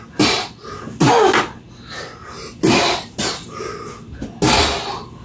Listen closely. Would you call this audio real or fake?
real